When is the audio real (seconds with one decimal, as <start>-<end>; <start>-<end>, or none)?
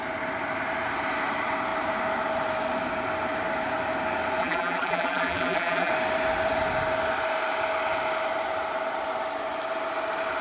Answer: 0.0-4.4; 5.9-10.4